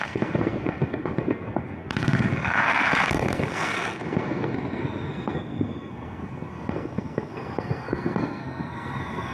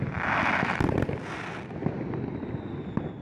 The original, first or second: second